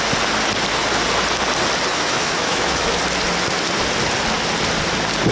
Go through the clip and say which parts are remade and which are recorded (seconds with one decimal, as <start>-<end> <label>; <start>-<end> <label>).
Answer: 0.0-1.9 recorded; 1.9-3.0 remade; 3.0-5.3 recorded